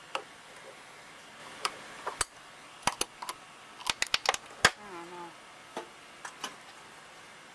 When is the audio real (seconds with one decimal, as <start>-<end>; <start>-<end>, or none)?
0.0-1.4; 2.2-7.5